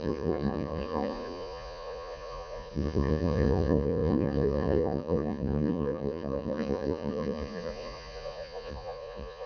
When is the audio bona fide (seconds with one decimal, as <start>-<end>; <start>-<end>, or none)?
none